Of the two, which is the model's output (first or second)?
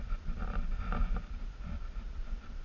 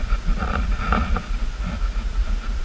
second